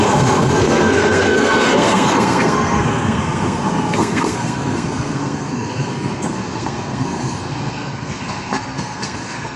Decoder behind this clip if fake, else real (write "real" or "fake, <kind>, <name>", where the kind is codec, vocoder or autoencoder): fake, codec, SNAC